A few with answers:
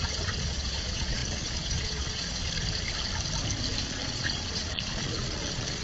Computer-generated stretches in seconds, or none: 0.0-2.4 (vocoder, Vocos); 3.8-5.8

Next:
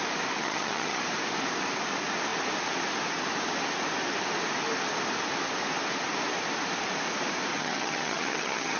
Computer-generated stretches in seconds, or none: 0.4-1.0 (vocoder, HiFi-GAN); 7.5-8.8

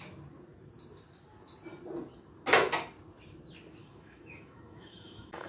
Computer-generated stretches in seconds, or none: 3.8-5.5 (autoencoder, DAC-VAE)

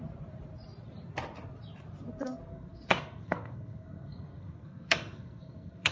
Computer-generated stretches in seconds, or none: 2.5-5.9 (codec, SNAC)